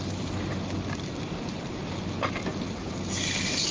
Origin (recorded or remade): remade